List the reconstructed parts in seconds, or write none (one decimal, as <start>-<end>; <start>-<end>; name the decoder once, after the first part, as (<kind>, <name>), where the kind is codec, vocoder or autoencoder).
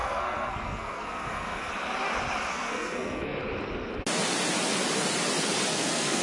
0.0-1.7 (codec, SNAC); 2.5-3.4; 5.7-6.2